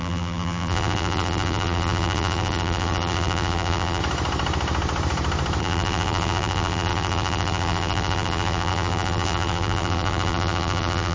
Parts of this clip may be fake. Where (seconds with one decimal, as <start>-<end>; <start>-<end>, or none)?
0.0-4.0; 5.6-11.1